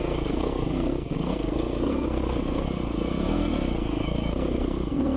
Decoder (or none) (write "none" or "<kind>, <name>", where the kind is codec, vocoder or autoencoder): codec, SNAC